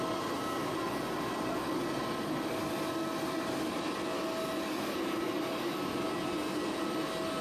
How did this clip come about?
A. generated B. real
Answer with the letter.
B